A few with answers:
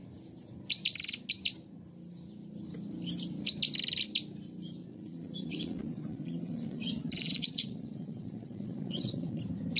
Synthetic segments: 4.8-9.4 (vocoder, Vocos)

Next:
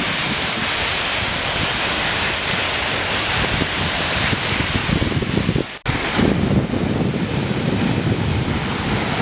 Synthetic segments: 0.0-1.1 (vocoder, BigVGAN v2); 2.1-4.8

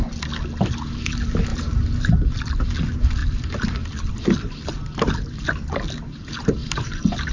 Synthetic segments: 1.5-2.1 (vocoder, BigVGAN v2); 6.6-7.3

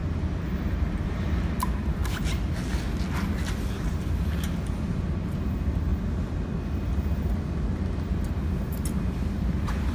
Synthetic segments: 0.8-2.0 (vocoder, BigVGAN v2); 3.6-5.9; 8.1-9.9